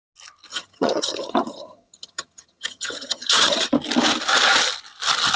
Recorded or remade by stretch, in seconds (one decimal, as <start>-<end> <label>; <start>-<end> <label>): 0.0-0.5 recorded; 0.5-3.7 remade; 3.7-5.4 recorded